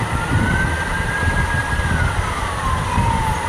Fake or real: real